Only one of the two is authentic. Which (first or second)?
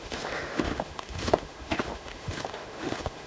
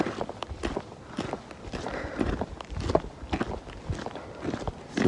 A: second